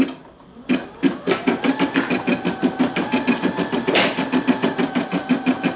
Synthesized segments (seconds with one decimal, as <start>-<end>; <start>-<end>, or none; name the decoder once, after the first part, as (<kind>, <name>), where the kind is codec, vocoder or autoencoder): none

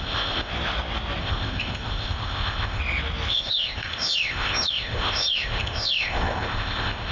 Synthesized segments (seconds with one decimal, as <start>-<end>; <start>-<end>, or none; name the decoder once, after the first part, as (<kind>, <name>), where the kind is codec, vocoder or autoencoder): 0.0-0.5 (codec, ZipCodec); 1.2-2.8; 3.3-7.1